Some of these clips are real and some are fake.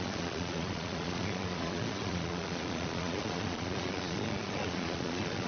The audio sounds fake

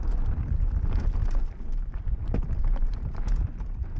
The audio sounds real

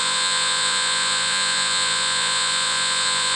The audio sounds fake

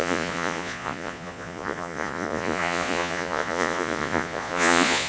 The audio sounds fake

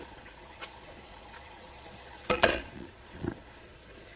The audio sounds fake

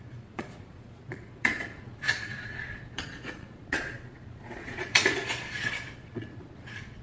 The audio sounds fake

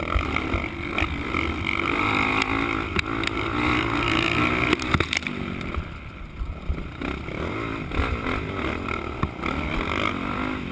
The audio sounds real